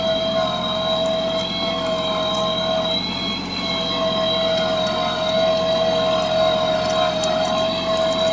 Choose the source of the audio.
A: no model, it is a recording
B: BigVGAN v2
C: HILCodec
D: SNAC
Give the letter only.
A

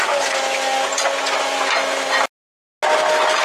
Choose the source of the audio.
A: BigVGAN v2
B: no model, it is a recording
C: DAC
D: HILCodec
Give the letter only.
B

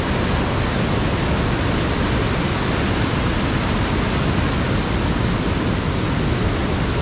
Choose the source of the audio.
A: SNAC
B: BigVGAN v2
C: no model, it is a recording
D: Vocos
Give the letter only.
C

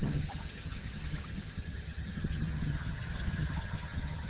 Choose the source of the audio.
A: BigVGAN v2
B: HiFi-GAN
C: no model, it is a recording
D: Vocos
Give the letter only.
B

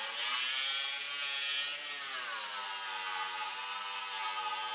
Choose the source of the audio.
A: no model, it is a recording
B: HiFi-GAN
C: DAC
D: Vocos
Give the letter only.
A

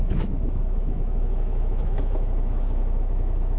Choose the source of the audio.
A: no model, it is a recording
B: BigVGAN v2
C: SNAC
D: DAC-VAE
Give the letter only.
D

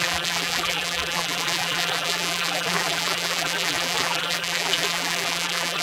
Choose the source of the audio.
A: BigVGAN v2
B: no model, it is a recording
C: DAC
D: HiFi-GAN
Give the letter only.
A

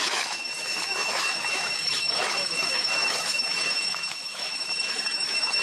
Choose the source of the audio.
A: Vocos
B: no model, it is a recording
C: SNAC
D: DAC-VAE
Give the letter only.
D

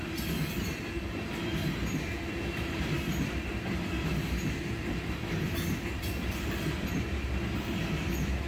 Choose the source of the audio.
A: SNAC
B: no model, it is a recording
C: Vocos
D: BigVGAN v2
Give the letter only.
B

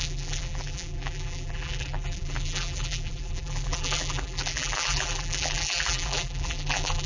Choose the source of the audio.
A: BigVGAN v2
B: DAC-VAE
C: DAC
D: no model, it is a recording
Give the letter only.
A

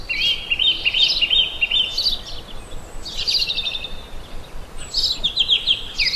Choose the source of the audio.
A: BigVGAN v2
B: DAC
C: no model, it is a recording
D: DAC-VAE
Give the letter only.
C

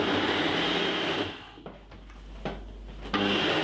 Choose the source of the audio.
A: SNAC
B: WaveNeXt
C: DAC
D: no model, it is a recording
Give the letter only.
D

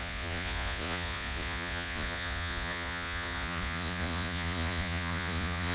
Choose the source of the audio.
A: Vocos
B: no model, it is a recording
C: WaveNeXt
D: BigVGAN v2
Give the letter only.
A